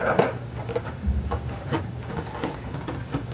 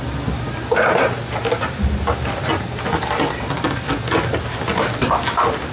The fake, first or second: first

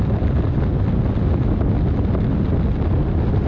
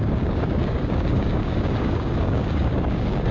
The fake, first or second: second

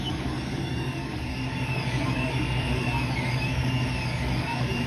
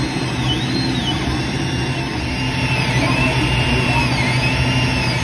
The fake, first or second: first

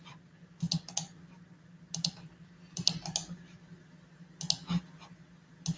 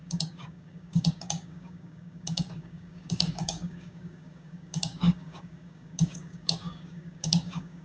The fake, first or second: second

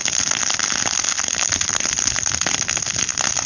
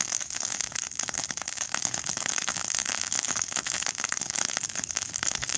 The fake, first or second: second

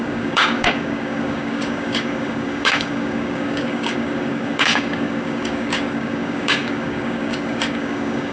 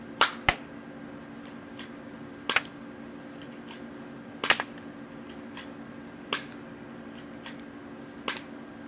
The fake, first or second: first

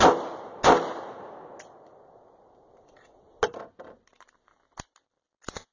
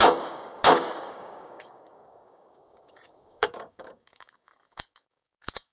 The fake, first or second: second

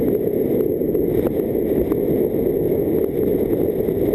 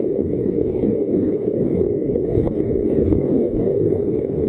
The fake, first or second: second